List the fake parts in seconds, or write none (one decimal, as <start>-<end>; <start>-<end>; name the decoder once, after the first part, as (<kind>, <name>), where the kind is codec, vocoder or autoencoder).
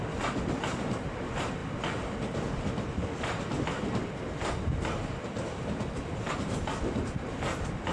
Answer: none